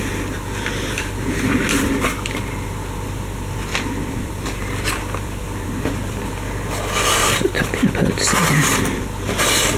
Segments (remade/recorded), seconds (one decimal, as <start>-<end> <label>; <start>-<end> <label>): 0.0-3.7 recorded; 3.7-5.7 remade; 5.7-9.8 recorded